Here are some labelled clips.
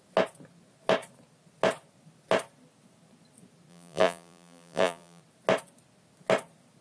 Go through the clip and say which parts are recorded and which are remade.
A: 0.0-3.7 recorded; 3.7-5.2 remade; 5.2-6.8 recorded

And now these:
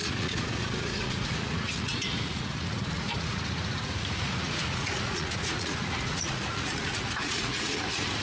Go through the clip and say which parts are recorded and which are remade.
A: 0.0-8.2 remade

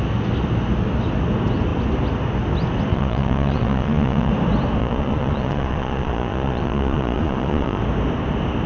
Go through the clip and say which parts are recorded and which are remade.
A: 0.0-2.9 recorded; 2.9-4.3 remade; 4.3-4.8 recorded; 4.8-7.8 remade; 7.8-8.7 recorded

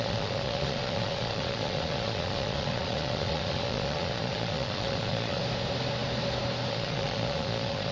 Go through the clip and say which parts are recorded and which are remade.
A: 0.0-5.4 remade; 5.4-6.7 recorded; 6.7-7.9 remade

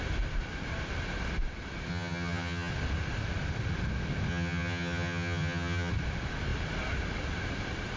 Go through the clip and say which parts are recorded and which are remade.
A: 0.0-1.9 recorded; 1.9-2.7 remade; 2.7-4.3 recorded; 4.3-5.9 remade; 5.9-8.0 recorded

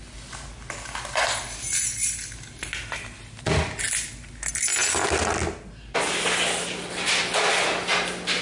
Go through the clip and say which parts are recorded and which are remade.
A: 0.0-8.4 recorded

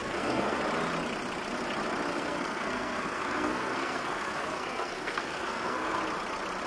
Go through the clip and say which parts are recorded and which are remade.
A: 0.0-0.6 remade; 0.6-2.1 recorded; 2.1-6.0 remade; 6.0-6.7 recorded

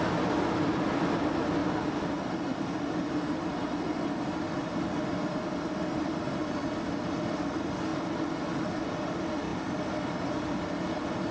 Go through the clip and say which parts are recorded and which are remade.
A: 0.0-11.3 recorded